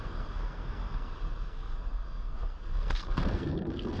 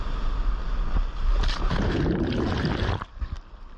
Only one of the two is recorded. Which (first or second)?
second